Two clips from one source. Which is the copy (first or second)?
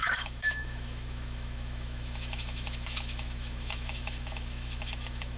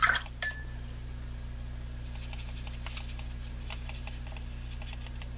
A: first